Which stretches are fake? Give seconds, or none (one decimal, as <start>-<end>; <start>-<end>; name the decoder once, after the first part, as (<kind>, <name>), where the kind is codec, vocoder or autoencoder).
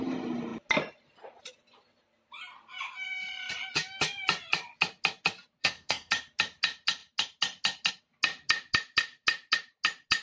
5.6-6.1 (codec, SNAC)